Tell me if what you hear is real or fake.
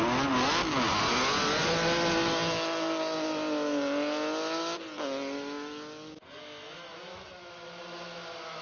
real